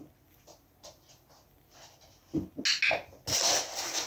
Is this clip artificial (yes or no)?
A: no